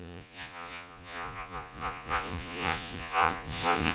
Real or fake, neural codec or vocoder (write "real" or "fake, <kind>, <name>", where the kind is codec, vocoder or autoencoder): fake, vocoder, Vocos